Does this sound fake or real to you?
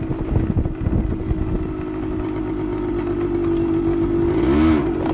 real